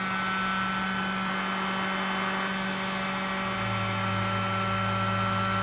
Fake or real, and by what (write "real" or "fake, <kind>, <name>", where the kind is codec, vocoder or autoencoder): real